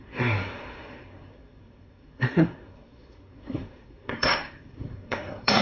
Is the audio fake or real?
fake